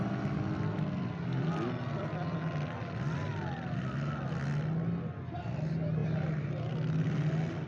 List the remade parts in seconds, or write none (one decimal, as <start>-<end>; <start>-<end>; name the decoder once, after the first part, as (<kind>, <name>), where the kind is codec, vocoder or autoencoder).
none